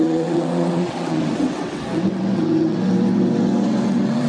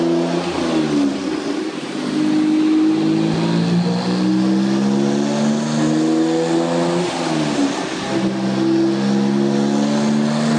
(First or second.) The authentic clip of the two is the second